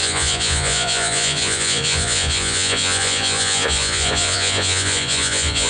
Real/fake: fake